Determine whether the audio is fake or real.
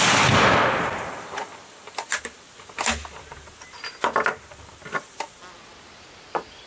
real